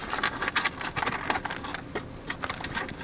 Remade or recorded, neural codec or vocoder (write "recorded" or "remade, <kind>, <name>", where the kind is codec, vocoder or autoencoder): recorded